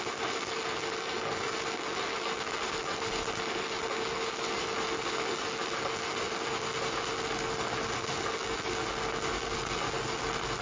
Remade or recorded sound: recorded